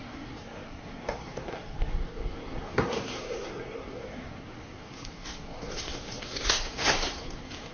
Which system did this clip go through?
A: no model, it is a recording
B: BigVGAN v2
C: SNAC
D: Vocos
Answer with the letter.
C